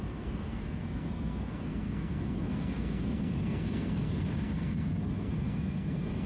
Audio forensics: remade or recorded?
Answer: remade